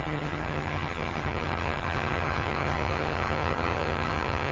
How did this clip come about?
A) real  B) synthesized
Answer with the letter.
B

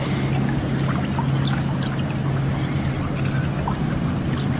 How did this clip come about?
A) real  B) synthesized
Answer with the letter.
A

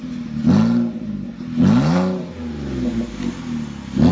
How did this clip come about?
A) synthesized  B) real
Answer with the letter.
B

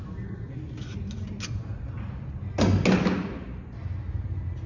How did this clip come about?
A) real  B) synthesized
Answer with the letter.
A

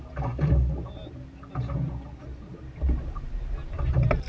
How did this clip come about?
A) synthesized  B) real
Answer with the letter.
B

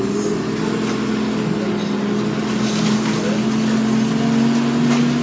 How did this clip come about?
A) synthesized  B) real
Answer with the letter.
B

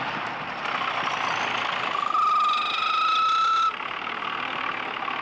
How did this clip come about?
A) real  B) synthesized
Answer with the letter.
A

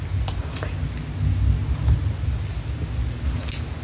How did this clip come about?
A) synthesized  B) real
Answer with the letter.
B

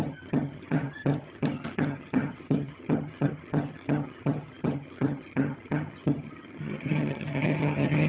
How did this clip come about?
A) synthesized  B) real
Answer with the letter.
A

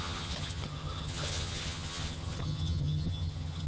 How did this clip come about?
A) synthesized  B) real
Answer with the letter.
A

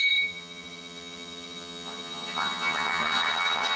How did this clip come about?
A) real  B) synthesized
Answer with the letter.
B